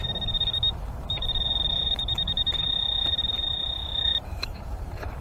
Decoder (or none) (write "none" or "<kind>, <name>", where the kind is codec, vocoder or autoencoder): vocoder, BigVGAN v2